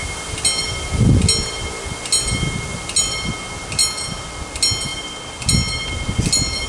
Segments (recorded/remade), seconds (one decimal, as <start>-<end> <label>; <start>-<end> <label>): 0.0-6.7 recorded